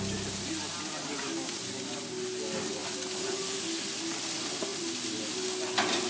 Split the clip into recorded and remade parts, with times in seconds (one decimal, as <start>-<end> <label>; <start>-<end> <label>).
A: 0.0-4.7 recorded; 4.7-5.2 remade; 5.2-6.1 recorded